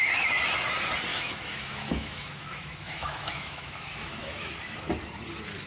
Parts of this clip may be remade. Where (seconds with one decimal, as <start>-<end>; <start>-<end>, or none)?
1.1-4.5